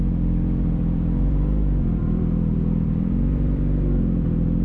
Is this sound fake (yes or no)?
yes